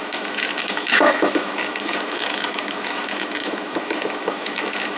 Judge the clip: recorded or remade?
remade